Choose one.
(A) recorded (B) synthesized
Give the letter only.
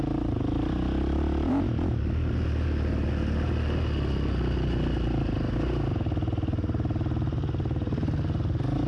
A